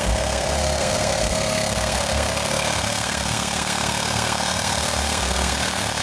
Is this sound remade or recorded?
remade